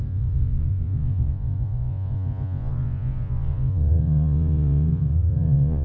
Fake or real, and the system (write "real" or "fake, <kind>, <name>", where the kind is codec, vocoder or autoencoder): fake, vocoder, Vocos